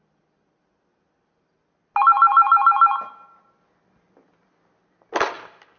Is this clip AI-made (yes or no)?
no